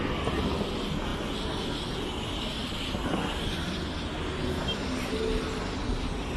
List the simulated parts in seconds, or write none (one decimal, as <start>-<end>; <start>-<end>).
none

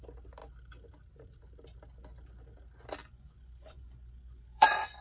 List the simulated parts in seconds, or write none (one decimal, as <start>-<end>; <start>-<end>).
3.0-5.0

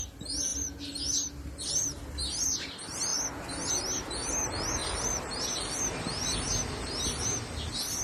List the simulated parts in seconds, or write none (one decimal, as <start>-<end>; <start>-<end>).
4.8-5.8

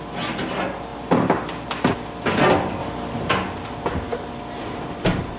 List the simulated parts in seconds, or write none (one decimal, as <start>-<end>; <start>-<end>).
0.9-2.3; 2.8-3.3